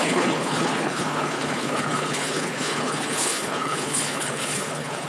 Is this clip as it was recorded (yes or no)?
no